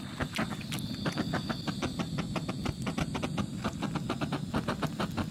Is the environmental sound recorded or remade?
recorded